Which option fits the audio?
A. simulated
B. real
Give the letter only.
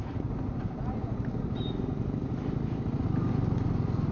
B